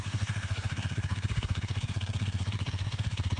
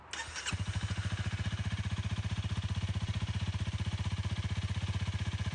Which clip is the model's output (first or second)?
first